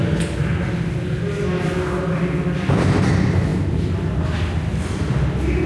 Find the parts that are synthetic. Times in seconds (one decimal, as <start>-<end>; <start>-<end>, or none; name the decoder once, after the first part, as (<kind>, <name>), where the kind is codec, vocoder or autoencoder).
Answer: none

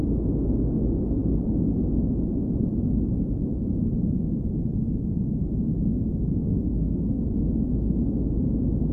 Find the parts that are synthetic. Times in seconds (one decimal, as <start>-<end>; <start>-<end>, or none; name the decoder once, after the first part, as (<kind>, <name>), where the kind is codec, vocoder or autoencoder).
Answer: 6.4-7.2 (codec, SNAC)

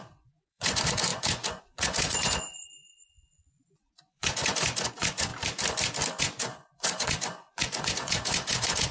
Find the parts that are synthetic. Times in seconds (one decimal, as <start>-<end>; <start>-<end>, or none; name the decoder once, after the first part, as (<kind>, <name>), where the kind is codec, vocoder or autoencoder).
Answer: 0.0-5.3 (vocoder, Vocos); 6.2-8.9

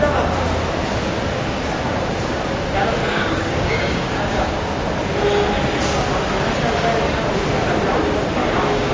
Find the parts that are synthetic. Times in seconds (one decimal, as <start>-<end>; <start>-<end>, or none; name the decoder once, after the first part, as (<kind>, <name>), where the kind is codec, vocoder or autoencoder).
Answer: 3.0-4.7 (codec, DAC); 8.4-8.9

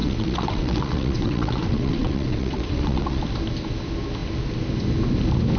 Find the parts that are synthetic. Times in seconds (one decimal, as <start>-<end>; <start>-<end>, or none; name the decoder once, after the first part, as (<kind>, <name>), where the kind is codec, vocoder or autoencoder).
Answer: 0.0-3.2 (vocoder, WaveNeXt)

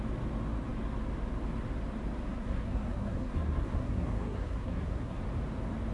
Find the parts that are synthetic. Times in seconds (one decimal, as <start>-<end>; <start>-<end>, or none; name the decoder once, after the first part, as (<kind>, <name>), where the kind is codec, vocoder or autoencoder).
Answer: 2.2-5.2 (codec, SNAC)

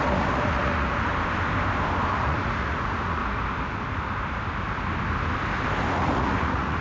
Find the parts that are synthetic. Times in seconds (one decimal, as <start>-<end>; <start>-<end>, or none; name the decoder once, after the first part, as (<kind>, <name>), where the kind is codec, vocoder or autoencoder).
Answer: 0.0-1.1 (vocoder, Vocos); 2.1-3.2; 5.9-6.8

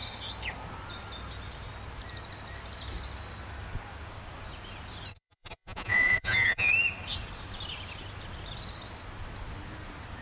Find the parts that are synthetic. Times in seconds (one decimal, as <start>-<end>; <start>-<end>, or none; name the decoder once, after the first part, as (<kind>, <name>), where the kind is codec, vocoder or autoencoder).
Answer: 5.1-6.7 (vocoder, Vocos)